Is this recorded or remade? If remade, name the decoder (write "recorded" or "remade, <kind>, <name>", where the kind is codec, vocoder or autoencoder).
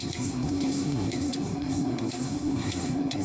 remade, codec, SNAC